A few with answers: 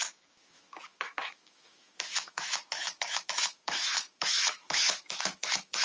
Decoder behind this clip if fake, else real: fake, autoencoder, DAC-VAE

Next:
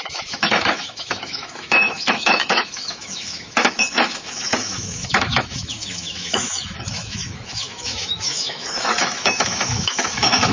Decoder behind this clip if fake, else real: fake, autoencoder, DAC-VAE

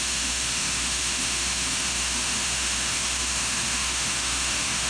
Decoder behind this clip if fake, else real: fake, autoencoder, DAC-VAE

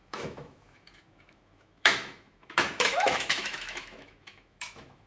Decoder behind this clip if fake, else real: fake, autoencoder, DAC-VAE